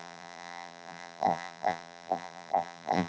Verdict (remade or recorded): remade